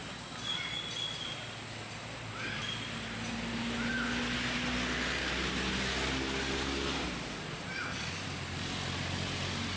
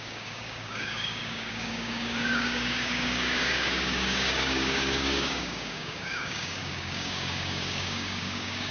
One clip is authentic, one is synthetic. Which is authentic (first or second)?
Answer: first